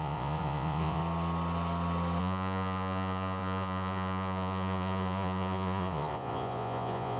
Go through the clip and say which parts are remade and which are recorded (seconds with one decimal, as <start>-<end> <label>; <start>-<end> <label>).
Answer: 0.0-1.0 remade; 1.0-2.2 recorded; 2.2-7.2 remade

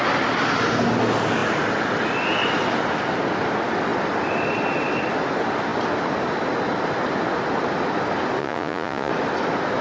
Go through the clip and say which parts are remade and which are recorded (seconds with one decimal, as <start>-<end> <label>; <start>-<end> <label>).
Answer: 0.0-8.4 recorded; 8.4-9.1 remade; 9.1-9.8 recorded

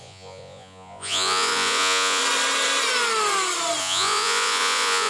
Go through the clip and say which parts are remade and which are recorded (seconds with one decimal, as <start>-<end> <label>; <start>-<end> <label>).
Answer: 0.0-2.2 remade; 2.2-3.8 recorded; 3.8-5.1 remade